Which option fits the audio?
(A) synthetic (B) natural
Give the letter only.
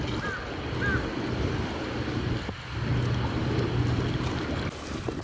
B